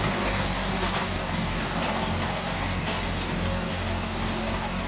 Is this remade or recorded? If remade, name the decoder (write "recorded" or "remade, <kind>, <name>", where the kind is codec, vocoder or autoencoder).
remade, codec, DAC